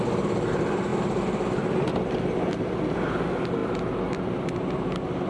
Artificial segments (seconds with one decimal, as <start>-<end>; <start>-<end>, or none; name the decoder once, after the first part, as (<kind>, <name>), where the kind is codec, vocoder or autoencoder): none